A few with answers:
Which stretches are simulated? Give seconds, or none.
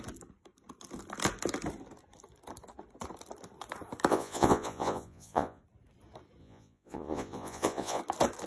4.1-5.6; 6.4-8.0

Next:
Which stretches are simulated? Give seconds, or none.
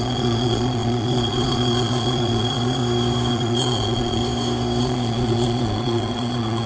0.0-2.8; 3.3-4.2; 4.8-6.7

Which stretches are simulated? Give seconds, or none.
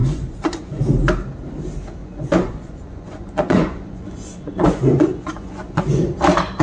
0.0-0.8; 2.0-6.0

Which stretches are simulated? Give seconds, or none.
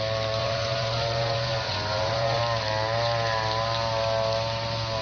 0.4-2.4